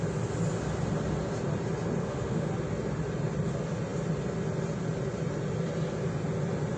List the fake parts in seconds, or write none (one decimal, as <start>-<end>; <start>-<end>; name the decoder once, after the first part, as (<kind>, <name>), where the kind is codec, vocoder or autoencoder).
2.0-2.5 (autoencoder, DAC-VAE)